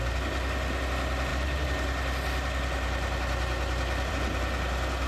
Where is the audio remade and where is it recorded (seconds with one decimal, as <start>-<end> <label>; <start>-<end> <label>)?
0.0-5.1 recorded